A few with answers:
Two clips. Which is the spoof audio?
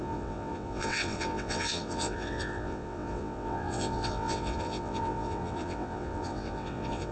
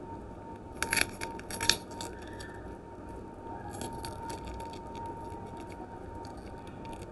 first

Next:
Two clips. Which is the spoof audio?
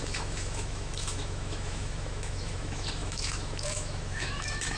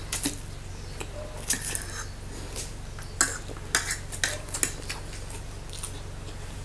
first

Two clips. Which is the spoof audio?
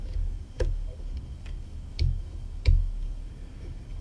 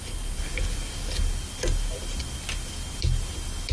first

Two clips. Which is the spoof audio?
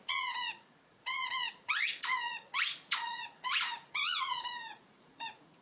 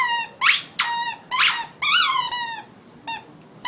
first